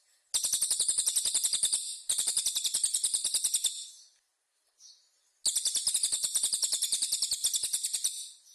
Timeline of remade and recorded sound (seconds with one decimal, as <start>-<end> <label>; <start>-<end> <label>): 0.0-8.5 recorded